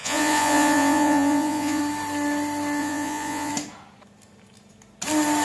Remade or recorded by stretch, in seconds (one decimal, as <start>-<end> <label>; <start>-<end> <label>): 0.0-1.8 remade; 1.8-2.8 recorded; 2.8-3.5 remade; 3.5-5.4 recorded

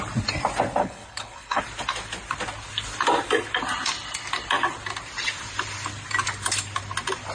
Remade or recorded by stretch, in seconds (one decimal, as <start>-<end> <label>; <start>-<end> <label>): 0.0-0.8 recorded; 0.8-1.6 remade; 1.6-7.3 recorded

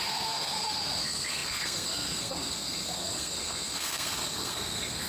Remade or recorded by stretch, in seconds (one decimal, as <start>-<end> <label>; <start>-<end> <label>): 0.0-5.1 remade

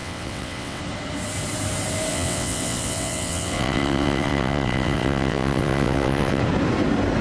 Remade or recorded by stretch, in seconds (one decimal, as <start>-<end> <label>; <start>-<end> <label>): 0.0-0.8 remade; 0.8-2.1 recorded; 2.1-6.4 remade; 6.4-7.2 recorded

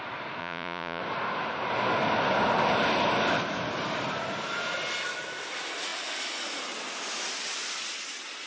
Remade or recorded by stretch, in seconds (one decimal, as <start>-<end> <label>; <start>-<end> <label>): 0.0-0.4 recorded; 0.4-1.0 remade; 1.0-8.5 recorded

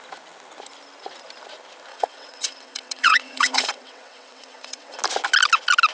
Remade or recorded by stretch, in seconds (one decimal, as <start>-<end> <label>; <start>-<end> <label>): 0.0-1.9 recorded; 1.9-5.0 remade; 5.0-5.9 recorded

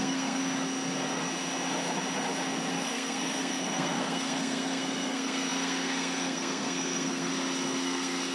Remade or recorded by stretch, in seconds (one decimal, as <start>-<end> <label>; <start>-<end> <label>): 0.0-0.4 remade; 0.4-2.7 recorded; 2.7-7.3 remade; 7.3-7.8 recorded; 7.8-8.3 remade